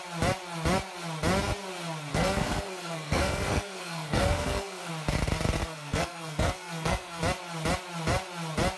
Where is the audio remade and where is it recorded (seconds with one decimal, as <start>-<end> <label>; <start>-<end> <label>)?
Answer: 0.0-2.1 recorded; 2.1-4.9 remade; 4.9-5.6 recorded; 5.6-7.2 remade; 7.2-8.8 recorded